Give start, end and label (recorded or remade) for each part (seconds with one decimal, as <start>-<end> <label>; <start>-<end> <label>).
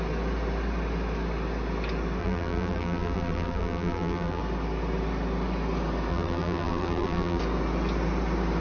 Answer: 0.0-2.2 recorded; 2.2-4.4 remade; 4.4-6.1 recorded; 6.1-7.4 remade; 7.4-8.6 recorded